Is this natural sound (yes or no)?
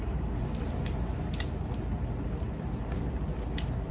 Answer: yes